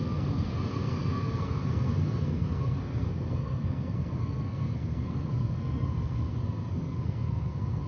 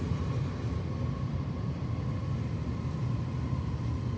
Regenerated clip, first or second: first